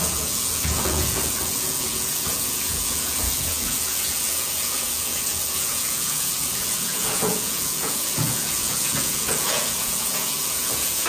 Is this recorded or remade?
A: remade